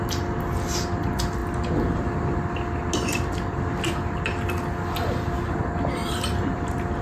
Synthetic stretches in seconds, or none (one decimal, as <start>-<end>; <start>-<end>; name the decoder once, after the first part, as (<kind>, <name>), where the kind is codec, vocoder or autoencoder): 6.0-7.0 (vocoder, BigVGAN v2)